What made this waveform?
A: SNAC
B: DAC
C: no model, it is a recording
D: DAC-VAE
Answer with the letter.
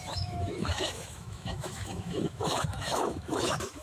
D